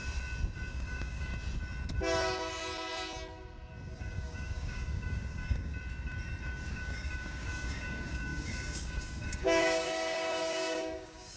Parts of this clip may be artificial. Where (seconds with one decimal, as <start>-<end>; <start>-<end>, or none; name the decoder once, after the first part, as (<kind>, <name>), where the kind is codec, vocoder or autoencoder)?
0.7-1.3 (codec, DAC); 4.0-5.7; 6.7-11.4